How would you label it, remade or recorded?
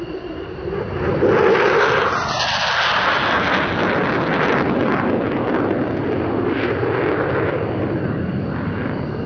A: recorded